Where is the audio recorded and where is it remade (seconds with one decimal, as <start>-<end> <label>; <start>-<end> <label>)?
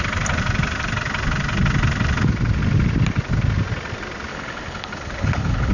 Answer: 0.0-4.3 recorded; 4.3-5.7 remade